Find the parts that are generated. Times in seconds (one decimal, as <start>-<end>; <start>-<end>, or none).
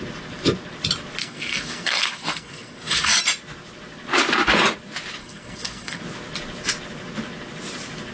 1.2-3.2; 5.2-6.0